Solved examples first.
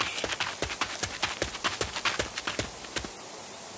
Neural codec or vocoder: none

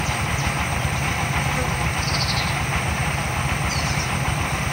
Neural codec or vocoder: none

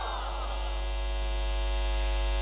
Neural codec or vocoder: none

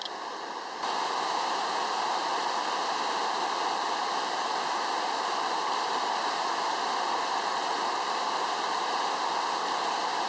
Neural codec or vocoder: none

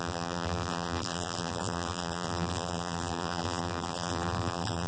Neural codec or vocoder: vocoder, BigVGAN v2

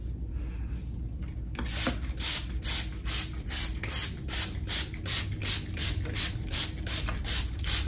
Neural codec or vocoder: none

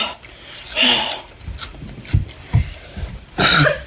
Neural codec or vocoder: vocoder, BigVGAN v2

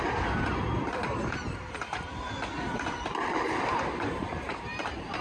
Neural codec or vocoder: vocoder, BigVGAN v2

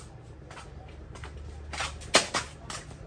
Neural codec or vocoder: none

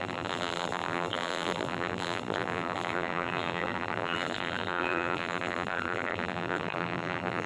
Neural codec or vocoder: vocoder, BigVGAN v2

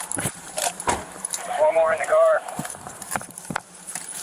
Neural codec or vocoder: vocoder, BigVGAN v2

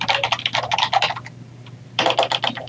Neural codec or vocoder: none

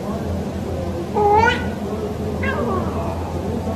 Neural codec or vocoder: none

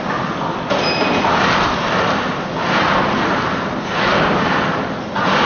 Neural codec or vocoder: vocoder, BigVGAN v2